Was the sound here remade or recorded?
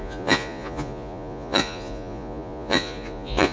remade